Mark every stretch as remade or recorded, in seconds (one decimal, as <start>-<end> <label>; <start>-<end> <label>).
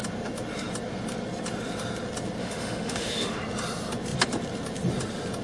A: 0.0-2.4 recorded; 2.4-3.4 remade; 3.4-5.4 recorded